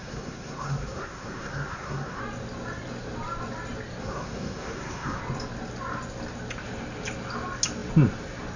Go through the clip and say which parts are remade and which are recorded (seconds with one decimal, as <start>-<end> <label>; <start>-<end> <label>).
0.0-2.2 remade; 2.2-4.0 recorded; 4.0-5.2 remade; 5.2-8.6 recorded

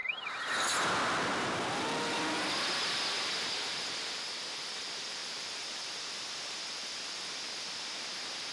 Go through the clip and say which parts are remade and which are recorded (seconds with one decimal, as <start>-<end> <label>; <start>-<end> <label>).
0.0-8.5 remade

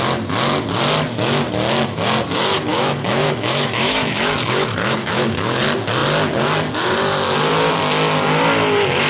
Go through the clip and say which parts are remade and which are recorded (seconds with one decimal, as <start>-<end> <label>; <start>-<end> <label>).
0.0-2.7 recorded; 2.7-5.6 remade; 5.6-9.1 recorded

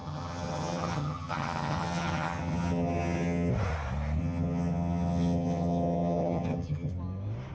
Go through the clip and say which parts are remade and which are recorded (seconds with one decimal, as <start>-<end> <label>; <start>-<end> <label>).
0.0-3.5 remade; 3.5-4.2 recorded; 4.2-6.9 remade; 6.9-7.5 recorded